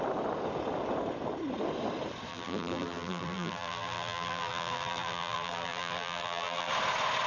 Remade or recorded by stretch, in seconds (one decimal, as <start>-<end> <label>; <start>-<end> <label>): 0.0-2.3 recorded; 2.3-6.7 remade; 6.7-7.3 recorded